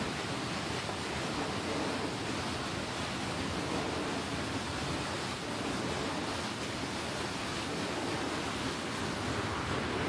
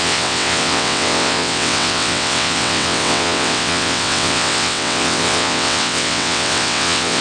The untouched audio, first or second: first